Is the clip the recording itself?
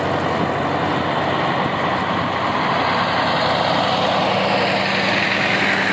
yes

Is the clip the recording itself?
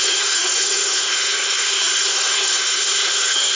no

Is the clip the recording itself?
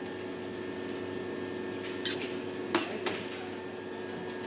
yes